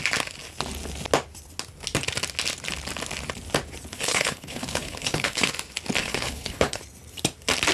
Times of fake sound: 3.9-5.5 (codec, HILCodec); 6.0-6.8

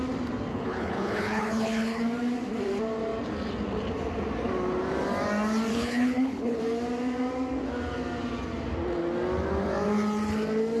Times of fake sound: 0.5-2.0 (codec, HILCodec); 5.7-6.6

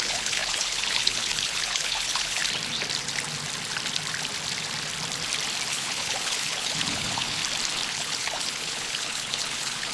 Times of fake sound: 0.0-2.4 (codec, HILCodec); 5.7-7.4; 7.9-9.9

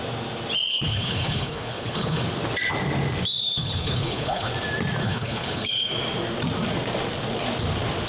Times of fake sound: 0.7-2.2 (codec, HILCodec); 3.4-4.5; 5.0-5.9

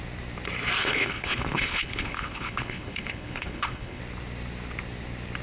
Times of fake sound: 0.8-4.0 (codec, HILCodec)